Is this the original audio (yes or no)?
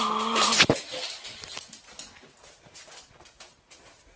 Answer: yes